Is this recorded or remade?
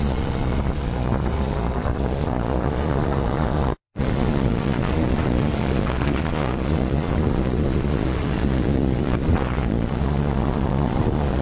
remade